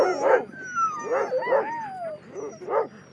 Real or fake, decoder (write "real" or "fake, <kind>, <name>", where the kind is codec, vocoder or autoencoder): real